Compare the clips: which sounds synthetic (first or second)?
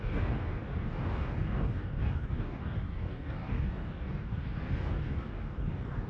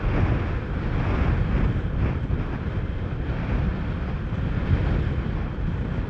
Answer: first